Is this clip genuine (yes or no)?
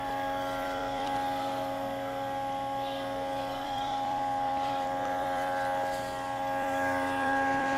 no